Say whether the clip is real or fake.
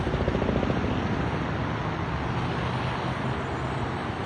real